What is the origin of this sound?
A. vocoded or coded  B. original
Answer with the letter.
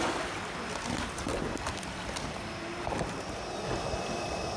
B